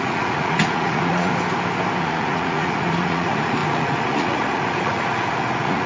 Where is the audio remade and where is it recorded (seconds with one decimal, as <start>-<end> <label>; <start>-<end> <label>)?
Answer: 0.0-1.3 remade; 1.3-2.0 recorded; 2.0-5.9 remade